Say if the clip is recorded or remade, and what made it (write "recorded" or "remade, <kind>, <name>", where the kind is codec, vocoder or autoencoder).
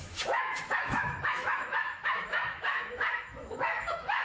remade, autoencoder, DAC-VAE